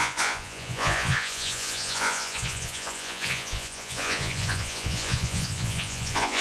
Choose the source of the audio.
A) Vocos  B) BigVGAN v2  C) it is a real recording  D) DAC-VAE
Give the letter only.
A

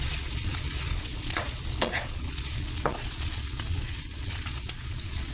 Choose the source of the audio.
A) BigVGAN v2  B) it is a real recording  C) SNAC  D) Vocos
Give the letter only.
D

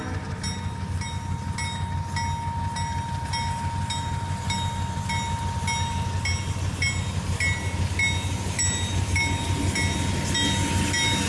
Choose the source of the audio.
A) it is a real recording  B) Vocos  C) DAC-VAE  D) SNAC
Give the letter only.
A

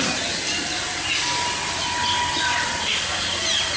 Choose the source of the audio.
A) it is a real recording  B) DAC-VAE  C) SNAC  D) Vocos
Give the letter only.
A